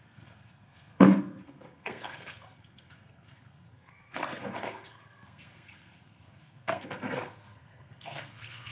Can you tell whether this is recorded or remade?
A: remade